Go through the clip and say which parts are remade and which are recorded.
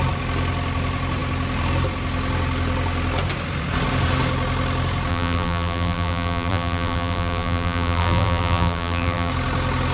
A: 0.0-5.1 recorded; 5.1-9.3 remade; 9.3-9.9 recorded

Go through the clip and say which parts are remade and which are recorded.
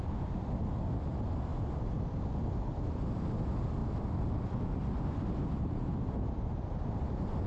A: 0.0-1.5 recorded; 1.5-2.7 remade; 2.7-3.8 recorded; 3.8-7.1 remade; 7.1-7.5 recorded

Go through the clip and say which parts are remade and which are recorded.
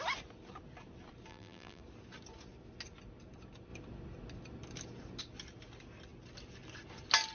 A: 0.0-1.3 recorded; 1.3-1.8 remade; 1.8-7.3 recorded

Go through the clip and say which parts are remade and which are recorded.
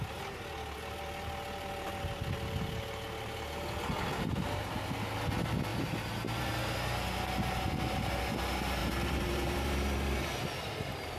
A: 0.0-5.7 recorded; 5.7-6.5 remade; 6.5-8.8 recorded; 8.8-10.7 remade; 10.7-11.2 recorded